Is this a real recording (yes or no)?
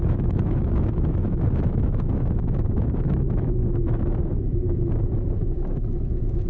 no